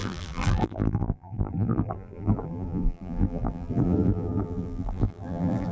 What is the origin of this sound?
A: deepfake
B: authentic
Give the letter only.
A